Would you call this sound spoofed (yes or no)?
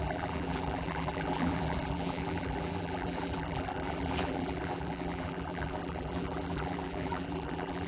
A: yes